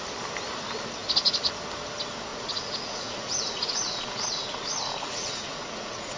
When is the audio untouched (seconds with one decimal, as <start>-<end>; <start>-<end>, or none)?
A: 0.0-2.3